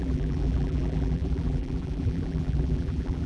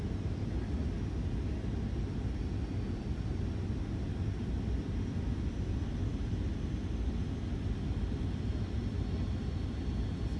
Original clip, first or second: second